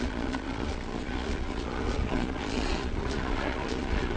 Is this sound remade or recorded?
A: remade